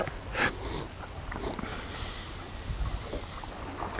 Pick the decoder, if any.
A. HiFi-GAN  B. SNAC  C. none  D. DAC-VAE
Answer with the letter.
C